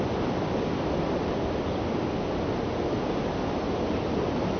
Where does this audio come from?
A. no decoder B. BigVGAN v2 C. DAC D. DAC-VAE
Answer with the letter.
A